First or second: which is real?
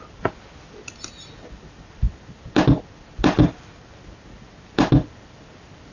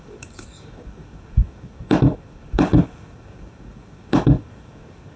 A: first